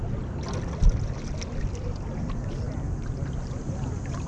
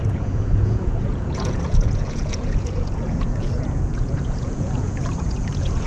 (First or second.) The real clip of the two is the first